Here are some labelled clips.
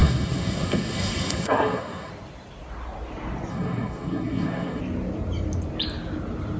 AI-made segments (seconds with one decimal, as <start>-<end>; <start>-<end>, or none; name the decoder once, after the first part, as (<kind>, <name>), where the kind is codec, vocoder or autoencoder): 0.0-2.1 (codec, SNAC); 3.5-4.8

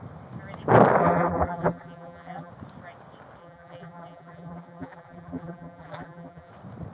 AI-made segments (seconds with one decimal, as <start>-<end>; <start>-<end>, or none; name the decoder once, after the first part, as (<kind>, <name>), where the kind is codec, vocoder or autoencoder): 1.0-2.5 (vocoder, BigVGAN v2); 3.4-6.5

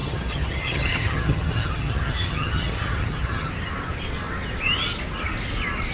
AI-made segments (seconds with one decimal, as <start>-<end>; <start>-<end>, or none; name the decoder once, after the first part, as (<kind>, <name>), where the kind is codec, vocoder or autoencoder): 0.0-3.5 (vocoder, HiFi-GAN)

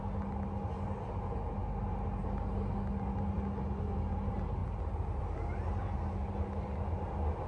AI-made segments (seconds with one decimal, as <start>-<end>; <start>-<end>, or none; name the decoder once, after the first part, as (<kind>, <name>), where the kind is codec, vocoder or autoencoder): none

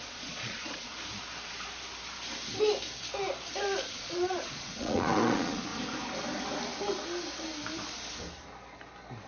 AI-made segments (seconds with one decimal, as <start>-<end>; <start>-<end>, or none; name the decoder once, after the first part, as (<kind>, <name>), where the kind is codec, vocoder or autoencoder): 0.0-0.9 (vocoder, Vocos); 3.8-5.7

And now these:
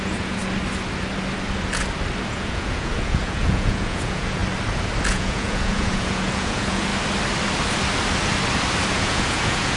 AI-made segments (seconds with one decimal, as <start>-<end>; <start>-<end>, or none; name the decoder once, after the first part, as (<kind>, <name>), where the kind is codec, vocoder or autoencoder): 0.0-0.4 (vocoder, Vocos); 2.3-4.4; 5.1-6.9; 8.9-9.8

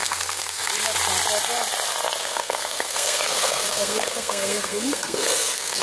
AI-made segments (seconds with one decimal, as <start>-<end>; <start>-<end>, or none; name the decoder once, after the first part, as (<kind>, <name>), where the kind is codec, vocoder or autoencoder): 0.0-0.7 (codec, SNAC); 2.2-5.8